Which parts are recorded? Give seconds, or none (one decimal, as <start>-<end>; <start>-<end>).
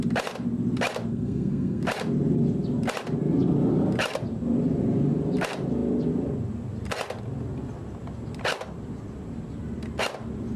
0.0-1.1; 1.8-10.6